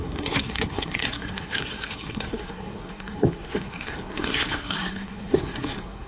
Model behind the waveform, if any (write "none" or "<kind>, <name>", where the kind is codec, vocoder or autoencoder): codec, SNAC